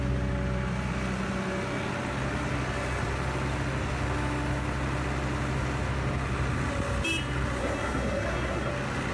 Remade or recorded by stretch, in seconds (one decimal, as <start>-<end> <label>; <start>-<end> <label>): 0.0-7.6 recorded; 7.6-8.7 remade; 8.7-9.1 recorded